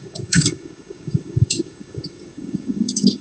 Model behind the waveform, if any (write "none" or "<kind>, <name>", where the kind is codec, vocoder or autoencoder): codec, DAC